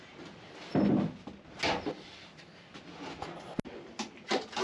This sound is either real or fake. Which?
real